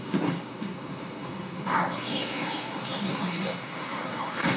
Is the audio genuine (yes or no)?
no